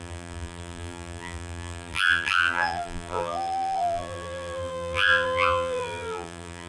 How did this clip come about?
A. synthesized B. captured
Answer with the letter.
A